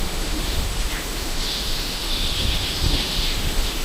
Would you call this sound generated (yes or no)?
yes